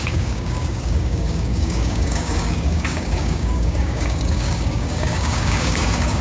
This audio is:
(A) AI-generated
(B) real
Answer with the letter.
A